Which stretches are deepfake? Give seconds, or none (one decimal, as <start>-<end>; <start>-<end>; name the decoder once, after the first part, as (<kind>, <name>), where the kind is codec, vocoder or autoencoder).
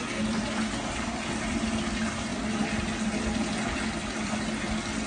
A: none